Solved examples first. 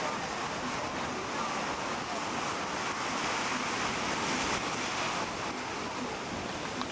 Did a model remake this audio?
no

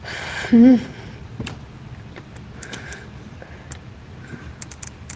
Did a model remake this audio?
yes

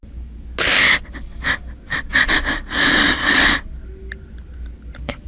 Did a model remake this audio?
no